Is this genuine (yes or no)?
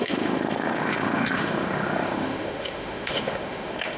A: no